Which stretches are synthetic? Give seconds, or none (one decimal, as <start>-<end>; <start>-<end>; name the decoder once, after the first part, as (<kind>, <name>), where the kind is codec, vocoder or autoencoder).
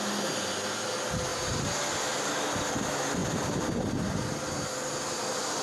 none